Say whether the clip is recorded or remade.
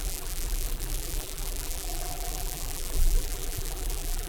remade